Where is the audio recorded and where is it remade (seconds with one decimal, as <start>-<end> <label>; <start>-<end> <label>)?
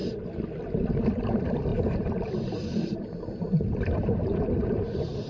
0.0-1.7 recorded; 1.7-5.3 remade